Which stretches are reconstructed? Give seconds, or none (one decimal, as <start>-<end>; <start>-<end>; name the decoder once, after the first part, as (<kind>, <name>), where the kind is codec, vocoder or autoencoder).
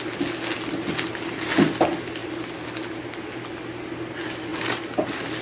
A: none